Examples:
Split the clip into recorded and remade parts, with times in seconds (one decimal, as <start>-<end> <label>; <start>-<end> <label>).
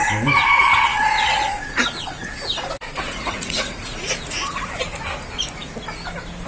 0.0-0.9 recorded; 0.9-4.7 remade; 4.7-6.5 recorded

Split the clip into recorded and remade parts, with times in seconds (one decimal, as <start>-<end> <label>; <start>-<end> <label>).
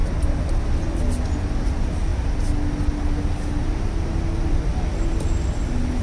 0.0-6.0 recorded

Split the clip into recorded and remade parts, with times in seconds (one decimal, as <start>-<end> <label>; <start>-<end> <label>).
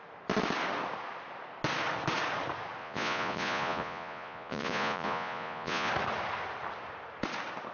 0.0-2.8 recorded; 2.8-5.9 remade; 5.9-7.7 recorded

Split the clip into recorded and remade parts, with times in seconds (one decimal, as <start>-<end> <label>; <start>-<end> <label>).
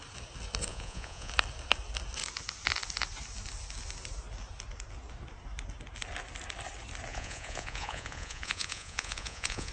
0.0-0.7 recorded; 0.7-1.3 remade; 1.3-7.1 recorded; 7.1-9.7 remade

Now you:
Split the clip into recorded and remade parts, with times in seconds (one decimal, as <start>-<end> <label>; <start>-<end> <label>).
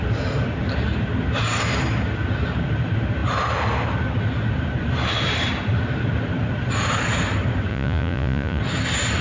0.0-7.7 recorded; 7.7-8.6 remade; 8.6-9.2 recorded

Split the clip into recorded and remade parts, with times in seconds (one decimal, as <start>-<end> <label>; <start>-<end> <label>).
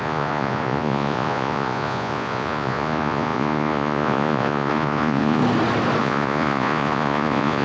0.0-5.4 remade; 5.4-6.0 recorded; 6.0-7.6 remade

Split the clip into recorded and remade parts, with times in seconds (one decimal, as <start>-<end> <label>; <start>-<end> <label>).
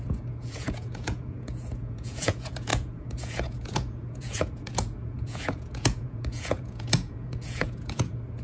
0.0-8.4 remade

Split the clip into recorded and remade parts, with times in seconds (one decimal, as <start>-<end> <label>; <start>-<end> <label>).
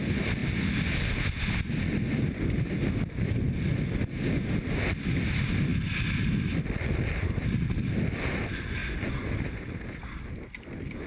0.0-11.1 recorded